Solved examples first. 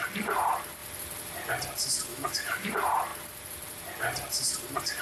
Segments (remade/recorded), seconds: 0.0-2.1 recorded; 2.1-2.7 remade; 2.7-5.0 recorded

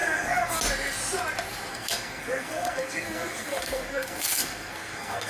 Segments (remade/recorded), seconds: 0.0-0.6 remade; 0.6-1.7 recorded; 1.7-5.3 remade

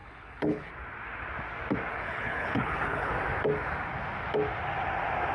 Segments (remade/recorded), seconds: 0.0-0.7 remade; 0.7-1.9 recorded; 1.9-3.1 remade; 3.1-5.3 recorded

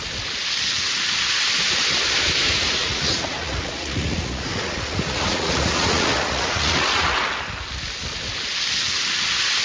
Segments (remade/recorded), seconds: 0.0-2.8 recorded; 2.8-7.2 remade; 7.2-9.6 recorded

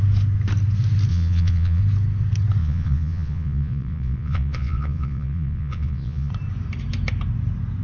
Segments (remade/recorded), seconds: 0.0-1.1 recorded; 1.1-1.8 remade; 1.8-2.6 recorded; 2.6-6.3 remade; 6.3-7.8 recorded

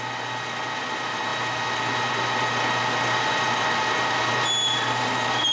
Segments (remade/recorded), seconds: 0.0-5.5 recorded